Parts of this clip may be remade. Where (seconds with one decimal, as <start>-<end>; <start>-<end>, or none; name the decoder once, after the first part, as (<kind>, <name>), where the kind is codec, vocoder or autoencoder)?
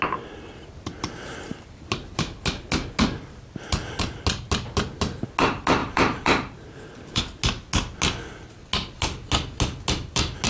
5.8-7.2 (vocoder, BigVGAN v2)